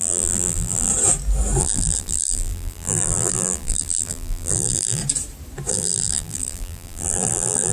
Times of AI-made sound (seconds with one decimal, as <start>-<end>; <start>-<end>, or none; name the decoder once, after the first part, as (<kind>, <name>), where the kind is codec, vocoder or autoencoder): 0.0-0.9 (vocoder, BigVGAN v2); 1.6-5.0; 5.7-7.7